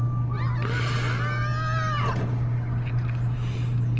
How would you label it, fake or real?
real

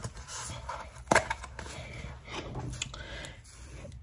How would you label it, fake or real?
real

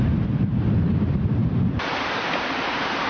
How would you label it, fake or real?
fake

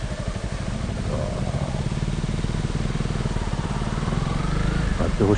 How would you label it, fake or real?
real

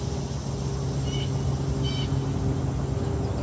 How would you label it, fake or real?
real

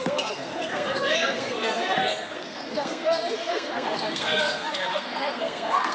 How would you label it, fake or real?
fake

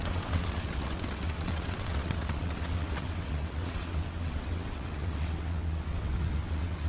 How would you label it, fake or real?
fake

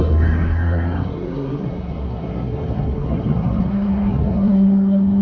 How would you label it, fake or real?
fake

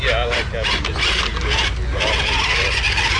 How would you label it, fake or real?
real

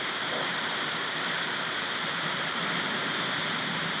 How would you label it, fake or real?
fake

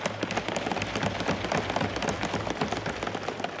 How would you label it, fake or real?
real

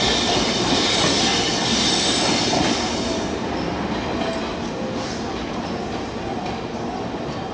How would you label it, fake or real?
real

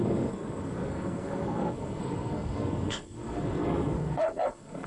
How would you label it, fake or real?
fake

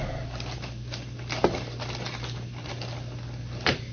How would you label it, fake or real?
real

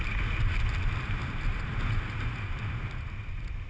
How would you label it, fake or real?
real